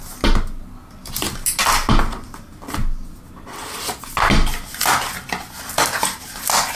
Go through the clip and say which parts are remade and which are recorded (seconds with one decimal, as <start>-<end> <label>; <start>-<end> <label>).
0.0-6.7 recorded